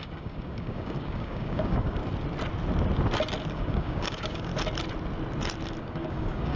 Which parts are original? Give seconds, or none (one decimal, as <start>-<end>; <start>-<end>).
2.0-3.5; 4.5-5.8